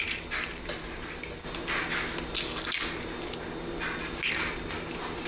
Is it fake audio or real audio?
real